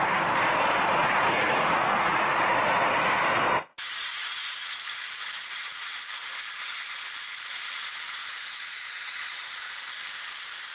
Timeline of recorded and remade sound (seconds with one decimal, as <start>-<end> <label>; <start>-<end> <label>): 0.0-1.0 recorded; 1.0-2.4 remade; 2.4-3.7 recorded; 3.7-6.0 remade; 6.0-8.2 recorded; 8.2-9.7 remade; 9.7-10.7 recorded